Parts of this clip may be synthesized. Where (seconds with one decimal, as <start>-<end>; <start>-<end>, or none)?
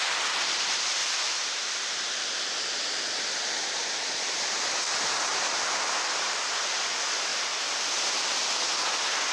1.0-2.4; 5.3-6.8